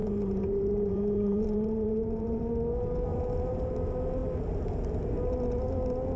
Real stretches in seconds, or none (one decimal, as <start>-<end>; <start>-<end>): 2.5-3.1; 3.7-6.2